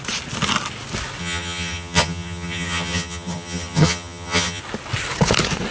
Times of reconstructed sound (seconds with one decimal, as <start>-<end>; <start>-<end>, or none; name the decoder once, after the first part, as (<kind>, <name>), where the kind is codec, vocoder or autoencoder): 1.2-4.6 (vocoder, HiFi-GAN)